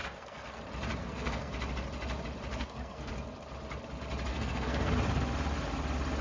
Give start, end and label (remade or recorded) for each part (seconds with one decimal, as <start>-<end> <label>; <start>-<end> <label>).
0.0-0.6 remade; 0.6-1.0 recorded; 1.0-1.5 remade; 1.5-2.5 recorded; 2.5-3.1 remade; 3.1-4.3 recorded; 4.3-4.9 remade; 4.9-6.2 recorded